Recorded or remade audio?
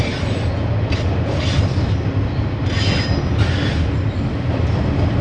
recorded